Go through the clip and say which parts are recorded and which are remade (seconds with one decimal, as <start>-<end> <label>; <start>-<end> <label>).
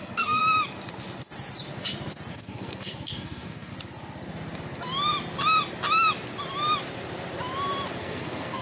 0.0-0.4 remade; 0.4-2.3 recorded; 2.3-3.7 remade; 3.7-7.9 recorded; 7.9-8.6 remade